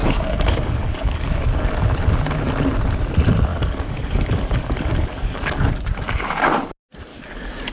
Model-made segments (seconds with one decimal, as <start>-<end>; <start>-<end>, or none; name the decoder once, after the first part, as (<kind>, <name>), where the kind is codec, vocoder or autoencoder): 0.0-1.2 (codec, DAC); 3.5-5.7; 7.1-7.7